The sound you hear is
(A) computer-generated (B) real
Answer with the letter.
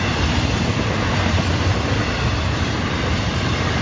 B